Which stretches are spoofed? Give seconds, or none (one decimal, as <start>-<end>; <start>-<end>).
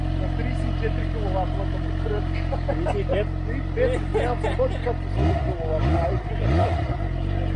none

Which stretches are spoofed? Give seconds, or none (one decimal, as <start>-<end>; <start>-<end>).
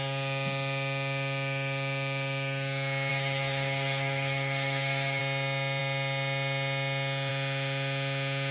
3.1-5.2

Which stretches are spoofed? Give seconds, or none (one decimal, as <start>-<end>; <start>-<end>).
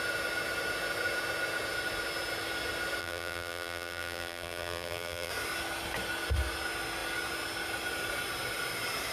3.0-5.3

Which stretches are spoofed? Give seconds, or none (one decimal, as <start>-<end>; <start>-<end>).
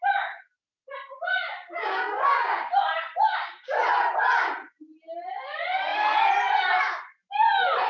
1.8-2.5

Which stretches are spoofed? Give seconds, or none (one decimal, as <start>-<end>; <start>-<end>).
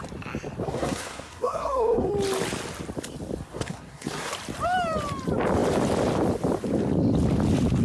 0.6-2.1; 3.5-4.3